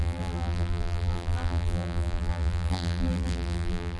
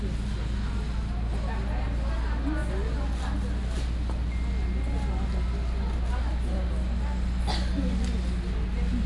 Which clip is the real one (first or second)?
second